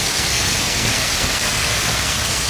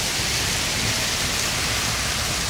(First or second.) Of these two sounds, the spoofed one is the first